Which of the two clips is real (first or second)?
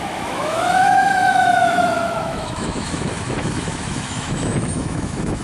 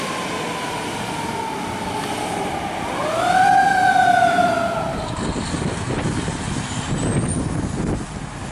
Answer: second